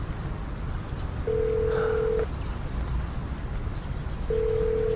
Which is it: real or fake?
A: real